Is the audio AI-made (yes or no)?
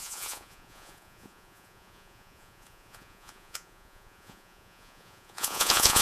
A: yes